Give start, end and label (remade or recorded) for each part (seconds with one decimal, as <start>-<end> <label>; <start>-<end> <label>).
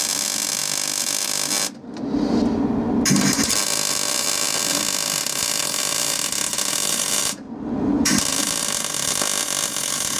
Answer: 0.0-10.2 recorded